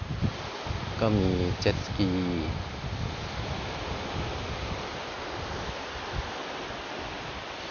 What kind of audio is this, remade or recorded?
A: recorded